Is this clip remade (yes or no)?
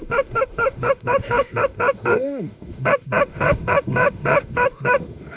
yes